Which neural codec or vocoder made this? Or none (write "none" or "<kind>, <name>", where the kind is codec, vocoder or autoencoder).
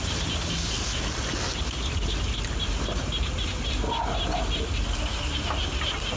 none